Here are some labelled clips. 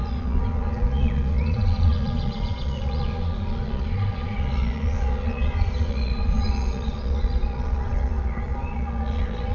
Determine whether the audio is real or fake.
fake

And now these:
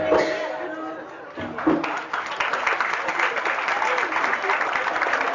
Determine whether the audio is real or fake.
real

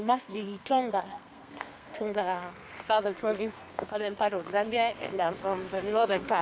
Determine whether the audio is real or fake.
fake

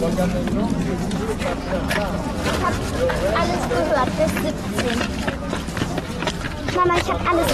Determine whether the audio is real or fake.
real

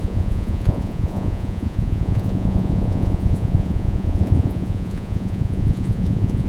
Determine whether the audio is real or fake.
fake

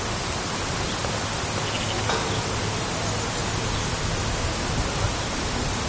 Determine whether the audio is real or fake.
real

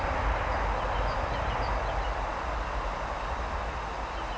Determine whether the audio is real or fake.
real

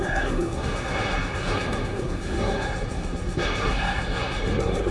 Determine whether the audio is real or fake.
fake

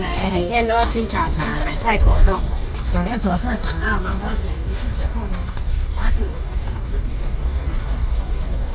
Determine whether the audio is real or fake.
fake